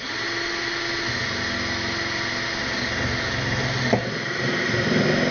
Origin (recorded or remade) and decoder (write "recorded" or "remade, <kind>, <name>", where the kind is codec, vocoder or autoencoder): recorded